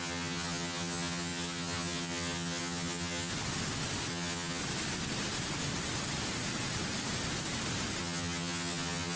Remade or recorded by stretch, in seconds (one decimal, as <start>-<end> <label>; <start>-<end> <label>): 0.0-3.3 remade; 3.3-4.1 recorded; 4.1-4.6 remade; 4.6-8.0 recorded; 8.0-9.2 remade